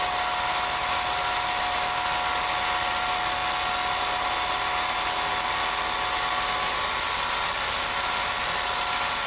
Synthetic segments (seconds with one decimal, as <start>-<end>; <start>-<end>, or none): none